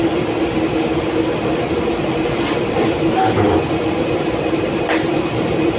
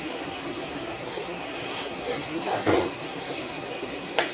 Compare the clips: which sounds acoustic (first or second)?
first